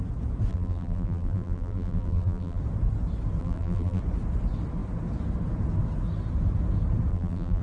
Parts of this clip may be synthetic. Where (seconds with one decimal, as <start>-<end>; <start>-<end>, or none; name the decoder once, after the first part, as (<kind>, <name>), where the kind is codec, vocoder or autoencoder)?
0.5-2.6 (vocoder, BigVGAN v2); 3.4-4.0; 7.1-7.6